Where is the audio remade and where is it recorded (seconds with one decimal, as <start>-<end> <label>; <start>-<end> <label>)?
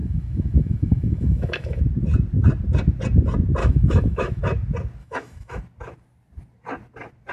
0.0-1.8 remade; 1.8-3.6 recorded; 3.6-4.4 remade; 4.4-5.0 recorded; 5.0-5.6 remade; 5.6-7.3 recorded